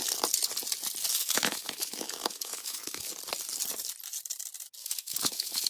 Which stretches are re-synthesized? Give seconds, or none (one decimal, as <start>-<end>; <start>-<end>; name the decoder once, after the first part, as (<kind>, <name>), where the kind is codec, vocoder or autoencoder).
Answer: 1.1-3.1 (autoencoder, DAC-VAE); 4.8-5.7